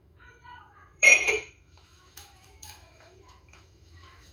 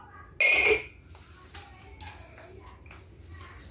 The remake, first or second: first